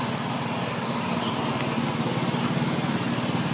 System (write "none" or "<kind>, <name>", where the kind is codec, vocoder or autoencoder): none